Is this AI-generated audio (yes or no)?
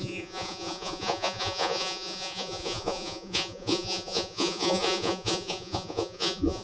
yes